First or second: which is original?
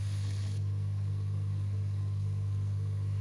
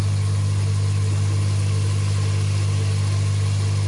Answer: second